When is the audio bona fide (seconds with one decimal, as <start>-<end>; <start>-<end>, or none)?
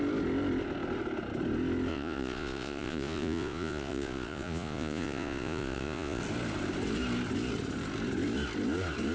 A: 0.0-1.9; 6.2-9.1